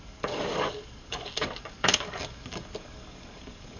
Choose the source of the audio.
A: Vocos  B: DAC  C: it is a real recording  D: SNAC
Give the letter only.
B